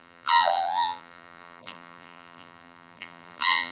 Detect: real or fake fake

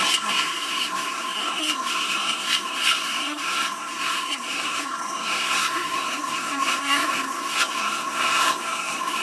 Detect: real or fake fake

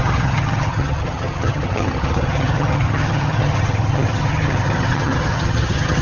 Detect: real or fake fake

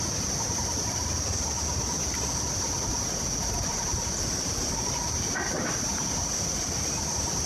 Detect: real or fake real